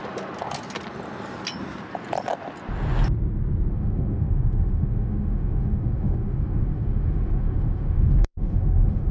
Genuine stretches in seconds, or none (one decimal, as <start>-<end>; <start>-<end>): 0.0-3.7